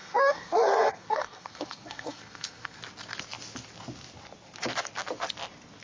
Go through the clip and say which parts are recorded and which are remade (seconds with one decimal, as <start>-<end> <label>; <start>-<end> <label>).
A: 0.0-2.8 remade; 2.8-5.8 recorded